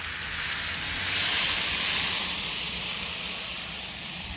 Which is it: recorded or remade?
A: recorded